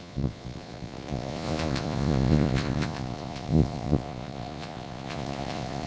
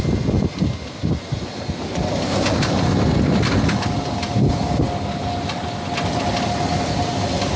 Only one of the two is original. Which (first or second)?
second